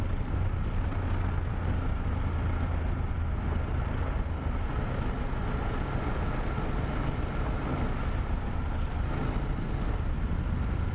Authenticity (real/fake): real